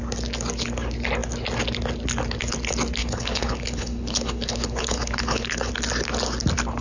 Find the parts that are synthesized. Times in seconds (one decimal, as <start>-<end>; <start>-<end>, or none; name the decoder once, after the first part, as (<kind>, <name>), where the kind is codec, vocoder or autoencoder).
3.0-5.7 (codec, HILCodec)